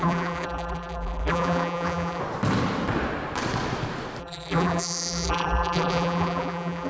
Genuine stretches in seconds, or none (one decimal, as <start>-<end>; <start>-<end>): 2.2-4.2